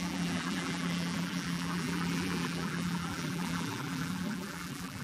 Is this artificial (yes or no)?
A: yes